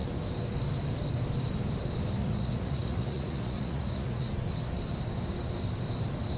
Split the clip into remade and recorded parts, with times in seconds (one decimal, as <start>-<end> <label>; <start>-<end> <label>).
0.0-2.2 recorded; 2.2-4.3 remade; 4.3-6.4 recorded